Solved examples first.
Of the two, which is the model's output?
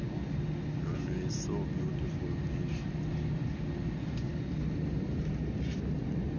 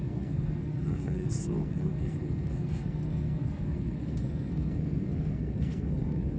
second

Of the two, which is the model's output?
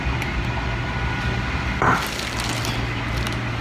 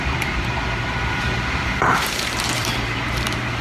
second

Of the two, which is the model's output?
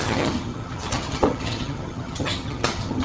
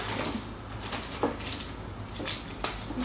first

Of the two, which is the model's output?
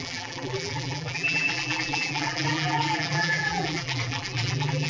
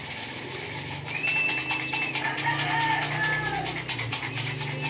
first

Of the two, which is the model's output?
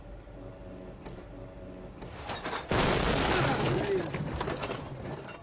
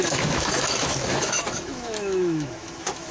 second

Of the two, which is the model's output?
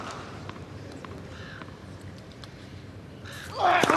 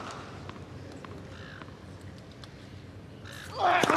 first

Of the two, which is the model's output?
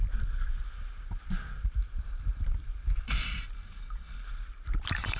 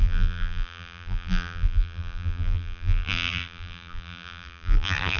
second